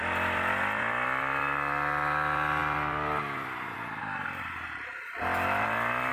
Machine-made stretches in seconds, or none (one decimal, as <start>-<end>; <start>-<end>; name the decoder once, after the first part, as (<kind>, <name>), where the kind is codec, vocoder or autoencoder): none